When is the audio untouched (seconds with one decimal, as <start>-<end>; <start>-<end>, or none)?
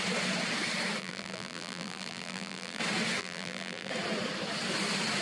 0.0-1.0; 2.8-3.2; 3.9-5.2